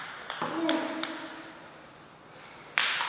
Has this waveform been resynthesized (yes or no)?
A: no